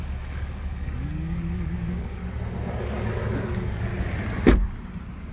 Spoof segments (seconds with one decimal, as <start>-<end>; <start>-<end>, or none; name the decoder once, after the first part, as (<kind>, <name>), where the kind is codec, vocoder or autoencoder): 0.0-2.2 (codec, DAC); 2.8-3.9